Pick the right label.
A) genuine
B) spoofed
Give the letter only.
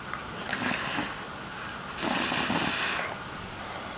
A